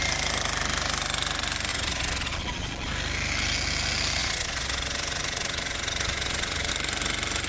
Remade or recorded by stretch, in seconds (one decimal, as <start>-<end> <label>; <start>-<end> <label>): 0.0-1.7 recorded; 1.7-2.9 remade; 2.9-4.2 recorded; 4.2-6.7 remade; 6.7-7.5 recorded